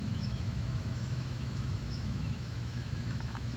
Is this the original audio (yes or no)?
no